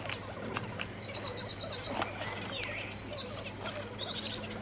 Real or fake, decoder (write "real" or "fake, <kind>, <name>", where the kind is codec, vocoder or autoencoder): real